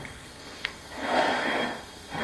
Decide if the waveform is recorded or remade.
remade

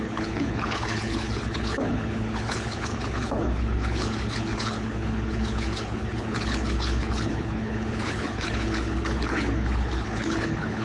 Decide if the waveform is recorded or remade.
remade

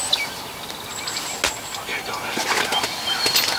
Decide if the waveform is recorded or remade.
recorded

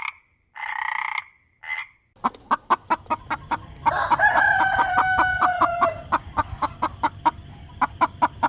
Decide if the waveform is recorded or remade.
recorded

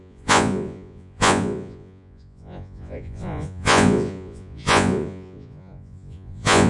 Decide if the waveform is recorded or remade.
remade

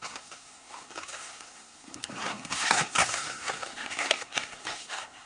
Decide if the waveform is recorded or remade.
remade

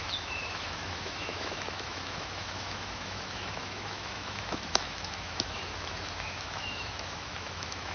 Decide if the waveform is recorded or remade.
remade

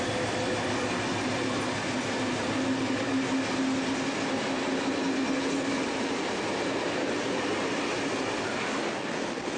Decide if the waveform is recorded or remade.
recorded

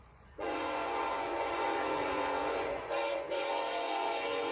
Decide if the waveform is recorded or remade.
remade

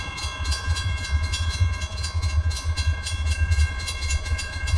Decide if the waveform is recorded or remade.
remade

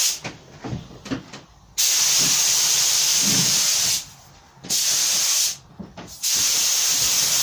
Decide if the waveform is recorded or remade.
recorded